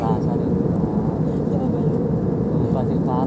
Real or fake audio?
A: real